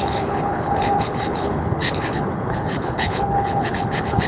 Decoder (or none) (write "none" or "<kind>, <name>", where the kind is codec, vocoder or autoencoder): codec, HILCodec